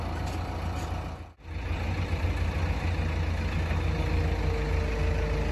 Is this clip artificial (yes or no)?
no